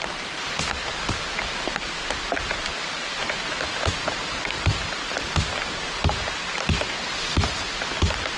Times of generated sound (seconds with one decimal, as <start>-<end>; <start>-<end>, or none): none